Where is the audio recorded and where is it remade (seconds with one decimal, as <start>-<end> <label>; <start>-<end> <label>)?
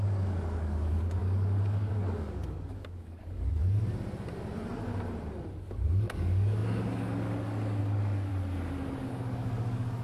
0.0-3.6 remade; 3.6-5.6 recorded; 5.6-8.3 remade; 8.3-9.0 recorded; 9.0-10.0 remade